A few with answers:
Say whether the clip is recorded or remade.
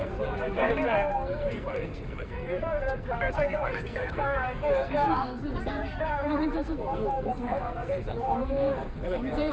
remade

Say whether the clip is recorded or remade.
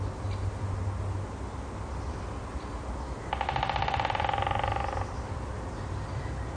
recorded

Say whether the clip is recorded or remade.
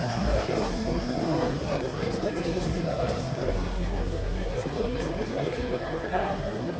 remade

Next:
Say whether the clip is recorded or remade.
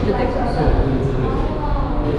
recorded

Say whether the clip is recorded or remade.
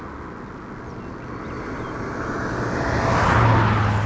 recorded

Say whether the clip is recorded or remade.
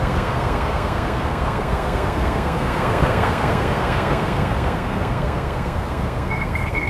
remade